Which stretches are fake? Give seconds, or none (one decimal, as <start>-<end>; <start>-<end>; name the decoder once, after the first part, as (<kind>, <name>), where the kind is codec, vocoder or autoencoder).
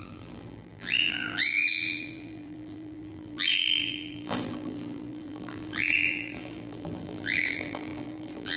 0.0-8.6 (vocoder, BigVGAN v2)